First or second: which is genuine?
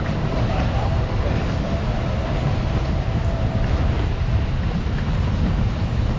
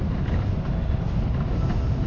second